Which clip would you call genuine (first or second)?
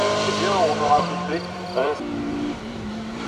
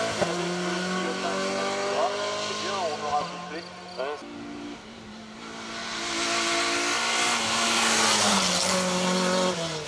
second